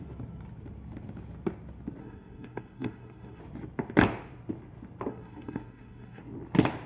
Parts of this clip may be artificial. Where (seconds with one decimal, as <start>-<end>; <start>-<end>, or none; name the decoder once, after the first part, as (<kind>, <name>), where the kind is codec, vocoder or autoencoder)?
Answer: 2.0-3.4 (codec, SNAC); 5.1-6.2